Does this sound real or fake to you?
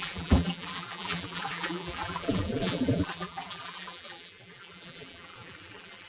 fake